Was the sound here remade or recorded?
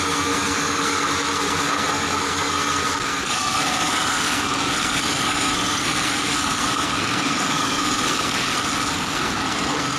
remade